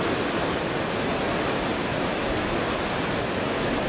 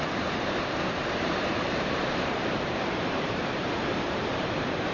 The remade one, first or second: second